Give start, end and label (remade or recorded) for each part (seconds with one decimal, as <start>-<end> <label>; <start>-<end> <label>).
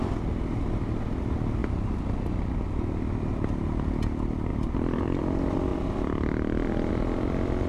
0.0-4.5 recorded; 4.5-5.2 remade; 5.2-7.7 recorded